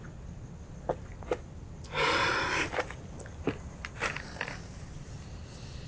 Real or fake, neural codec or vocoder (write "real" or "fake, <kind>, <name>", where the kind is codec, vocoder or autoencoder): real